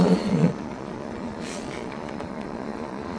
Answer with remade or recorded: remade